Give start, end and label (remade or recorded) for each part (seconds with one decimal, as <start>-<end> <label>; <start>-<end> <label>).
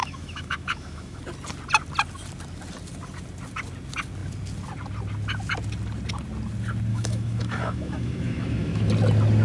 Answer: 0.0-1.2 remade; 1.2-6.9 recorded; 6.9-8.9 remade; 8.9-9.4 recorded